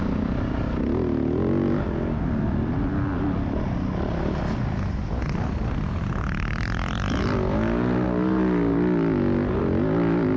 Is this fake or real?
real